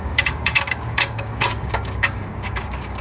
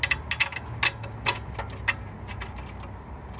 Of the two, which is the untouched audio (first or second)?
second